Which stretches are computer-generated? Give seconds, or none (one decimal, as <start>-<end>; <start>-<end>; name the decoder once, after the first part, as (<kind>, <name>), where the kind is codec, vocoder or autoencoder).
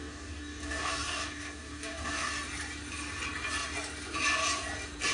0.0-2.3 (codec, DAC)